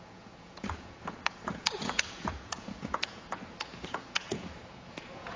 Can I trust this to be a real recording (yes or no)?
no